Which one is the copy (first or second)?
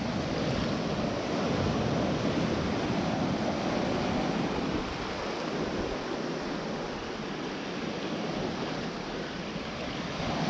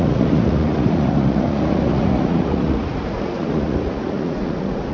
second